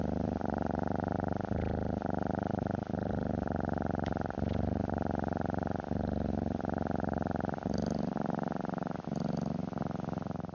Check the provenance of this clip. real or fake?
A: real